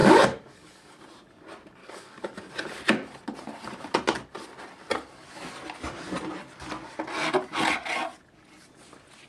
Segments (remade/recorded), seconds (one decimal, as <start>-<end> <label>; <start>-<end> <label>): 0.0-1.0 remade; 1.0-1.8 recorded; 1.8-2.4 remade; 2.4-9.3 recorded